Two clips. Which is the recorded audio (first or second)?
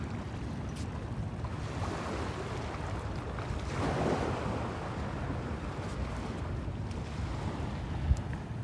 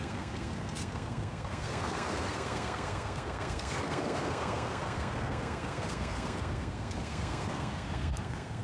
first